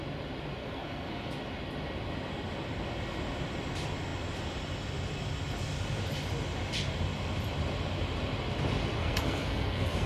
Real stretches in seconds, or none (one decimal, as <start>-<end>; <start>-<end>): 0.0-0.6; 1.3-9.0